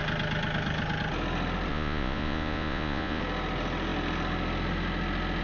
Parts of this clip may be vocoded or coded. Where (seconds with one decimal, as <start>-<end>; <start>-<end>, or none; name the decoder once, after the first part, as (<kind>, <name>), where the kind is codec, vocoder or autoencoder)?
1.7-3.2 (vocoder, Vocos)